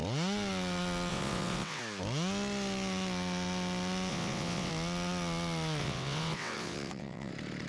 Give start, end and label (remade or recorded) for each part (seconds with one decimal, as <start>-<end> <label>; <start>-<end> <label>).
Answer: 0.0-1.1 recorded; 1.1-1.8 remade; 1.8-4.1 recorded; 4.1-4.7 remade; 4.7-5.8 recorded; 5.8-7.3 remade; 7.3-7.7 recorded